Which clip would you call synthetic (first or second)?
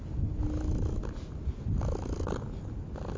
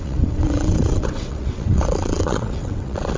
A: second